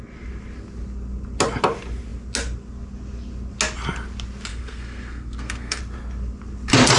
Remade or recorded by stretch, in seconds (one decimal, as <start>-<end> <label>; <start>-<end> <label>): 0.0-4.5 recorded; 4.5-5.8 remade; 5.8-7.0 recorded